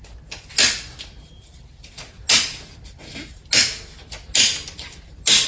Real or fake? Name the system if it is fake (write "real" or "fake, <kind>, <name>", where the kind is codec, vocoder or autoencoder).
real